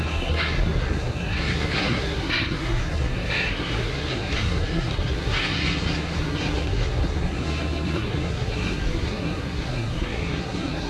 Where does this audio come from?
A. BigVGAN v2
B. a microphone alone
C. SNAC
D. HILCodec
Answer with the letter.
C